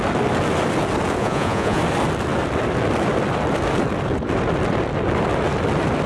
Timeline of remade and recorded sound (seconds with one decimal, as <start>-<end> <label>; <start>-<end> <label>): 0.0-1.2 recorded; 1.2-1.8 remade; 1.8-6.1 recorded